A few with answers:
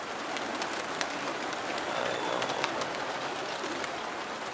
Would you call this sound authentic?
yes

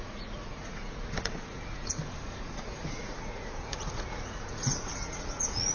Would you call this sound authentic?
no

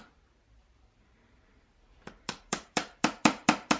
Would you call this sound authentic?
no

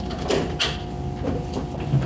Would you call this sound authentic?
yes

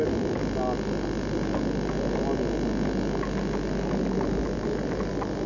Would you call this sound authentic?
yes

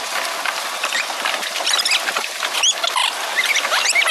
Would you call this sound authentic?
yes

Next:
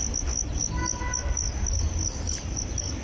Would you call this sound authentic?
yes